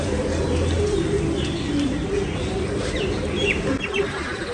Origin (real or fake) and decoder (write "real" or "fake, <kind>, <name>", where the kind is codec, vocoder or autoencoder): real